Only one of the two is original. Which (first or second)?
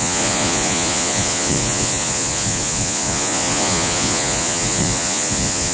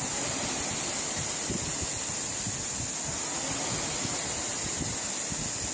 second